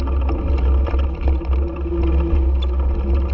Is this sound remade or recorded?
recorded